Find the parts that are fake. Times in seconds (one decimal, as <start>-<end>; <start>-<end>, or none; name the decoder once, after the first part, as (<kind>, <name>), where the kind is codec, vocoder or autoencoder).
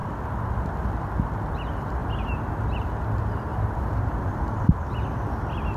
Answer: 3.5-4.6 (vocoder, BigVGAN v2)